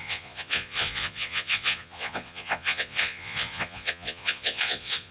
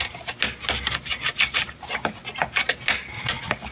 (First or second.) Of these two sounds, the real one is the second